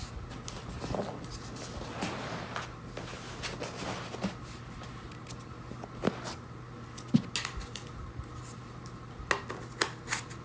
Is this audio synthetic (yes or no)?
no